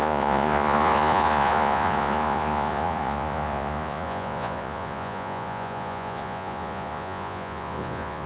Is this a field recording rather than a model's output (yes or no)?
no